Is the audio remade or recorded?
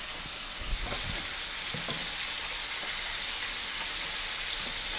recorded